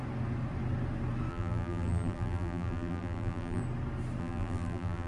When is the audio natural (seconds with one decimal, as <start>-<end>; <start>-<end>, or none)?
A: 0.0-1.3; 3.6-4.2